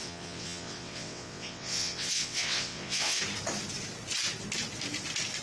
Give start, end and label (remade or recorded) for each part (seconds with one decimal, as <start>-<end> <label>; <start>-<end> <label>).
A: 0.0-3.2 remade; 3.2-5.4 recorded